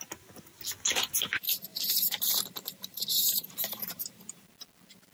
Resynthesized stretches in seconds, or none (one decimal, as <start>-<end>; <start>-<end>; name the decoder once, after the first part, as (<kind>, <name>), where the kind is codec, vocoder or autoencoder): 1.7-4.5 (vocoder, BigVGAN v2)